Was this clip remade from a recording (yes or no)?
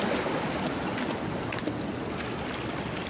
no